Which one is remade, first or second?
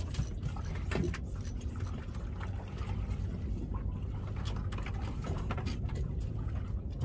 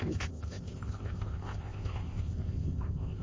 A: second